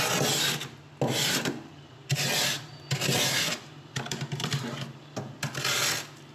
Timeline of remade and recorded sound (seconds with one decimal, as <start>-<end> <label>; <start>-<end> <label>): 0.0-1.2 recorded; 1.2-4.5 remade; 4.5-6.3 recorded